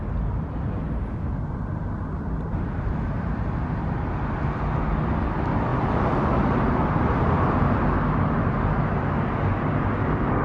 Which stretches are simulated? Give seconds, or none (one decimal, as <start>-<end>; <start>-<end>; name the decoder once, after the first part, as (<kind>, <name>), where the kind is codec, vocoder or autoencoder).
none